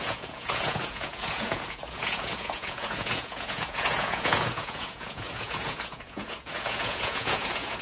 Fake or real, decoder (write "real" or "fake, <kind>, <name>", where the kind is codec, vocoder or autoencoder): fake, vocoder, Vocos